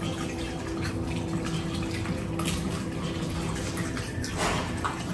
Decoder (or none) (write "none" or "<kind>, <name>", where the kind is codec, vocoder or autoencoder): none